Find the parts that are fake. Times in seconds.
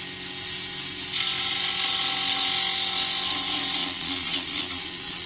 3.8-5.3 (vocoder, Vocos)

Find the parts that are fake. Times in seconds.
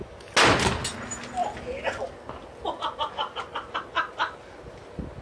none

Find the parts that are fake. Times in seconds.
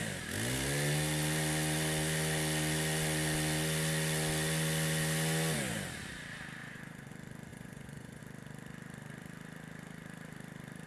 6.6-7.1 (vocoder, Vocos); 7.5-8.2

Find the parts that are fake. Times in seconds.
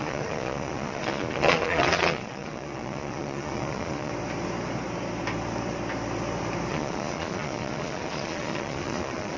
0.0-4.1 (vocoder, Vocos); 6.7-9.4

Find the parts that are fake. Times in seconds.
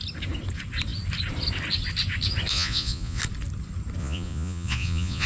2.5-3.2 (vocoder, Vocos); 4.0-5.3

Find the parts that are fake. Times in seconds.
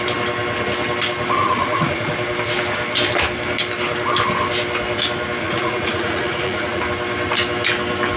1.4-2.1 (vocoder, Vocos); 5.4-6.8